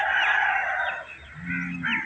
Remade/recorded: recorded